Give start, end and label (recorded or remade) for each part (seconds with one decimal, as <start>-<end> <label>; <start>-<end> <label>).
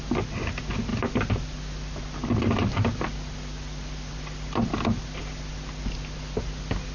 0.0-6.9 recorded